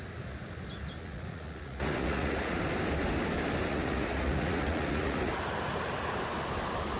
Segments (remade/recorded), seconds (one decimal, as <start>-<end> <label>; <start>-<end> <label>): 0.0-1.0 recorded; 1.0-2.6 remade; 2.6-3.7 recorded; 3.7-5.3 remade; 5.3-7.0 recorded